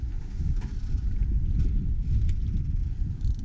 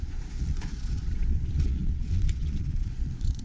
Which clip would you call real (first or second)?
first